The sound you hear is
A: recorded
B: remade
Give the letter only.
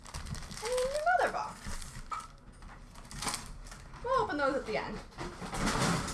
A